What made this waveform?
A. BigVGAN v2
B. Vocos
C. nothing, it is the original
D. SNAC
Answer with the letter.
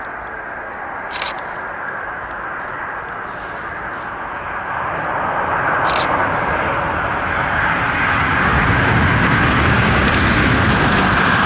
C